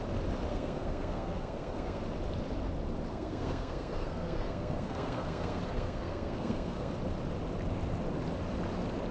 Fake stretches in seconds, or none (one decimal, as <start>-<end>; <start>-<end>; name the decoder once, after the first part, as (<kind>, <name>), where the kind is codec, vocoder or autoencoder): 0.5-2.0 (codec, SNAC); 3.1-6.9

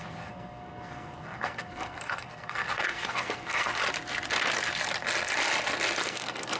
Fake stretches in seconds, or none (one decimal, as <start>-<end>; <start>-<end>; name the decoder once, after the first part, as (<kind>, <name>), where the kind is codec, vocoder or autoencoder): 0.0-3.7 (codec, SNAC); 6.0-6.6

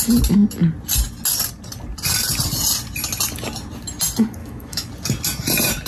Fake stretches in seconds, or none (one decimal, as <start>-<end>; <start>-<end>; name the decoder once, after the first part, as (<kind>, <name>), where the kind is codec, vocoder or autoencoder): 4.4-4.9 (autoencoder, DAC-VAE)

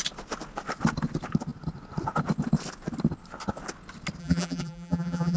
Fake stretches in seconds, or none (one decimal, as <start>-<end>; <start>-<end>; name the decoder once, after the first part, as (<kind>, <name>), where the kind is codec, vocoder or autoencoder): 4.2-5.4 (vocoder, BigVGAN v2)